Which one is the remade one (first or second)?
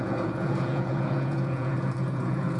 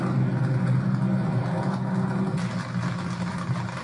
first